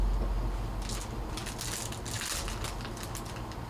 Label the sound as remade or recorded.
recorded